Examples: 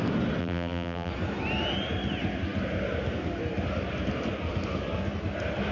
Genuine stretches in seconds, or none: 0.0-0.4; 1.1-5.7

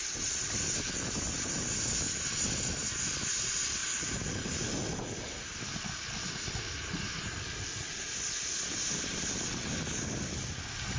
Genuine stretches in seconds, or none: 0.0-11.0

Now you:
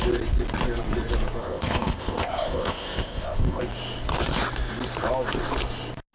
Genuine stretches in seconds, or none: 0.0-1.4; 3.6-6.1